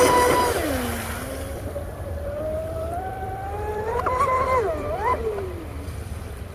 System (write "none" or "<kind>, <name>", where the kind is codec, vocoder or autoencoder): vocoder, BigVGAN v2